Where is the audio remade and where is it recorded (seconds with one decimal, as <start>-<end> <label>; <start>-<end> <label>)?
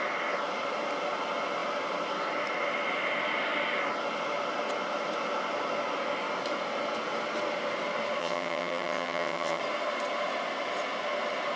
0.0-8.2 recorded; 8.2-9.6 remade; 9.6-11.6 recorded